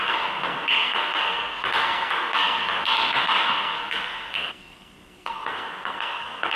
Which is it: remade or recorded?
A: remade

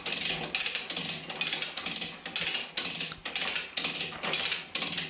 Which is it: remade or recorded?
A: recorded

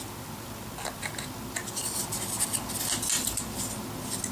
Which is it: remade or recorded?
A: recorded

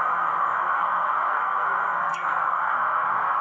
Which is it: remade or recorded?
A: remade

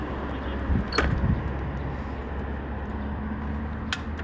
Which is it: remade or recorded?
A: recorded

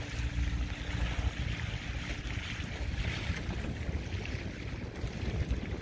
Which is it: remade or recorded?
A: recorded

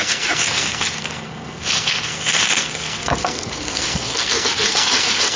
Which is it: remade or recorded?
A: remade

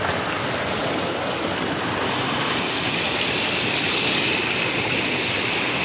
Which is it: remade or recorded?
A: recorded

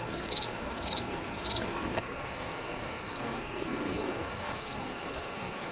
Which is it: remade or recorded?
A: remade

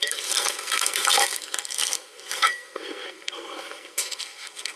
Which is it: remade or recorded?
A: remade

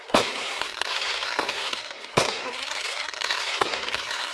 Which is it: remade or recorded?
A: remade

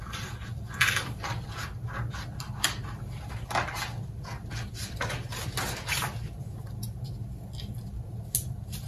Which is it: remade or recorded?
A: recorded